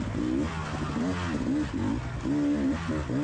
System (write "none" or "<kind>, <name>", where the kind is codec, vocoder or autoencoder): none